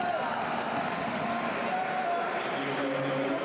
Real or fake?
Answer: real